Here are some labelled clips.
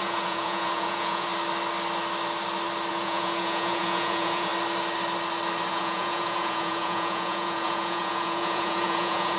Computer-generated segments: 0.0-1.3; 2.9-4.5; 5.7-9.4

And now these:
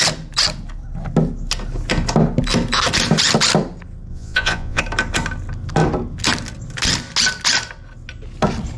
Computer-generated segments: 4.1-4.8

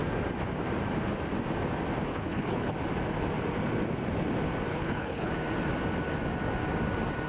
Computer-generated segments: 2.1-2.7; 4.7-5.3

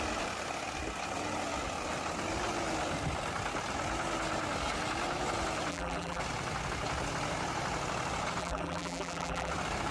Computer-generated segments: 5.7-6.2; 8.4-9.5

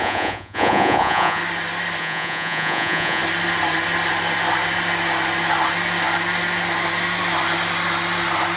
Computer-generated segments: 0.0-1.4; 2.0-3.2

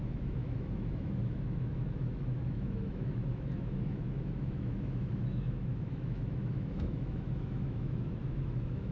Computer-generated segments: 0.0-8.9

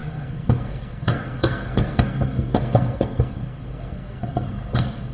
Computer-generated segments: 0.0-5.1

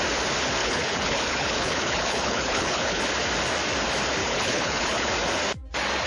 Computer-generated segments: 0.6-3.0; 4.2-5.1